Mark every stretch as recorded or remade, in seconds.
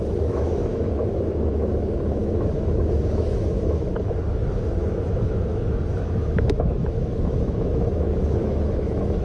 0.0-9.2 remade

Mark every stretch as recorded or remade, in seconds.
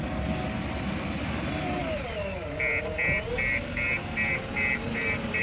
0.0-5.4 recorded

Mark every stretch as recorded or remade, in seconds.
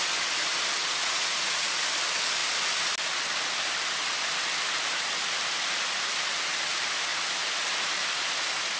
0.0-0.8 recorded; 0.8-1.8 remade; 1.8-8.8 recorded